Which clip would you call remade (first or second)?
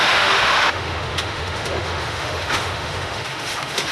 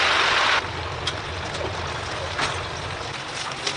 first